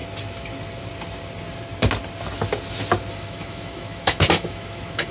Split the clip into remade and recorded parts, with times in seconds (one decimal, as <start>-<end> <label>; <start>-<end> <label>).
0.0-3.1 recorded; 3.1-5.1 remade